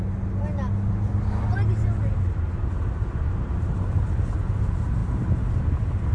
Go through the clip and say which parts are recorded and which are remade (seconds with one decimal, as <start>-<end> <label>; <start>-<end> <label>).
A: 0.0-6.1 recorded